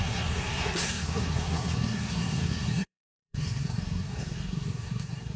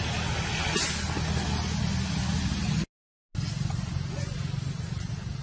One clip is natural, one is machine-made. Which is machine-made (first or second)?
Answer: first